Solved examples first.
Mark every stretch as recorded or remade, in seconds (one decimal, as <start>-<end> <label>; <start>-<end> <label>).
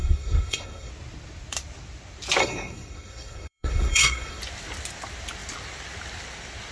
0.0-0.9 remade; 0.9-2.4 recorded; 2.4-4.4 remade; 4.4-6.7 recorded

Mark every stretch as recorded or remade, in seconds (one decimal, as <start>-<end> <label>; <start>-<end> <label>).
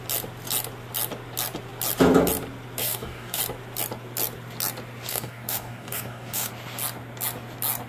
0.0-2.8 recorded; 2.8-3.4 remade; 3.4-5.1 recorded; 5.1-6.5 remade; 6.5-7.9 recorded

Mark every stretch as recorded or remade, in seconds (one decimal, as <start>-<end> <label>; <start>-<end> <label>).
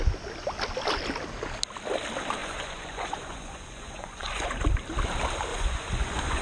0.0-2.4 recorded; 2.4-4.6 remade; 4.6-5.5 recorded; 5.5-6.4 remade